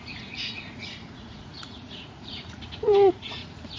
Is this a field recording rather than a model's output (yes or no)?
no